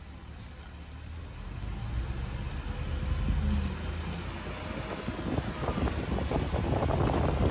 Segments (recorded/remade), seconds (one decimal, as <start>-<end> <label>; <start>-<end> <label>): 0.0-7.5 recorded